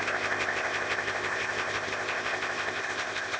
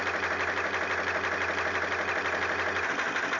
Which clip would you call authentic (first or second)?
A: second